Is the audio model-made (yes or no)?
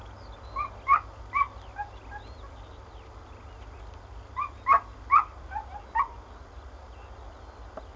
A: no